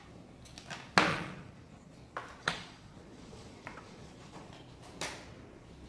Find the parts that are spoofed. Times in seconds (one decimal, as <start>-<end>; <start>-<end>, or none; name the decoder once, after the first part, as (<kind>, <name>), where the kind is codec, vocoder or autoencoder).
1.1-1.9 (vocoder, Vocos); 2.4-4.5